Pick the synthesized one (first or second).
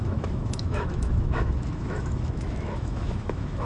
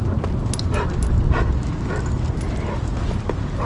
first